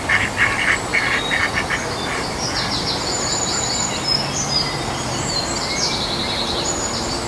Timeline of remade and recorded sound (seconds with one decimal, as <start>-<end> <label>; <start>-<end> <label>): 0.0-7.3 remade

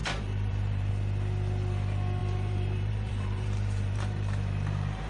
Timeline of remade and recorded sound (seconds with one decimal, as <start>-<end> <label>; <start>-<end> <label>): 0.0-0.9 remade; 0.9-2.2 recorded; 2.2-5.1 remade

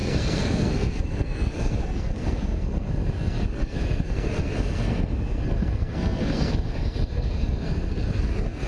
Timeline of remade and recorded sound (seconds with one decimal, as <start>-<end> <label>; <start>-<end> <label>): 0.0-8.7 remade

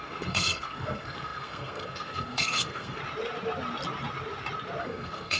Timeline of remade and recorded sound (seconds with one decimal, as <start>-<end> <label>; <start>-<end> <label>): 0.0-3.0 remade; 3.0-4.8 recorded; 4.8-5.4 remade

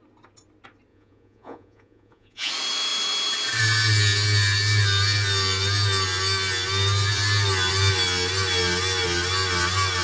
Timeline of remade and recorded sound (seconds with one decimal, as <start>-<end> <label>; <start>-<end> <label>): 0.0-0.9 recorded; 0.9-2.5 remade; 2.5-10.0 recorded